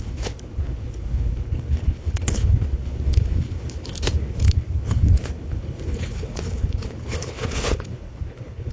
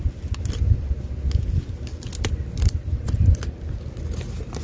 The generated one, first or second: first